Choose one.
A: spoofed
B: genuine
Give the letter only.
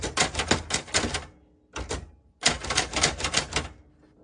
B